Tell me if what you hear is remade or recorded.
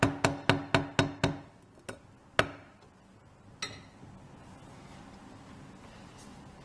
recorded